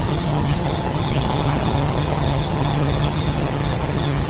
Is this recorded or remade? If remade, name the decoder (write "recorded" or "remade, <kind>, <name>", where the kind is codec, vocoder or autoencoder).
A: remade, vocoder, HiFi-GAN